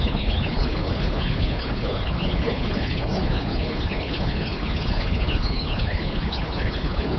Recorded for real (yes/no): no